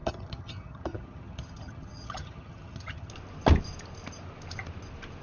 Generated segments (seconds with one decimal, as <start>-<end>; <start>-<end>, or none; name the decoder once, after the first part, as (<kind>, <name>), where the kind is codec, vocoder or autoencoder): 0.0-3.1 (vocoder, HiFi-GAN)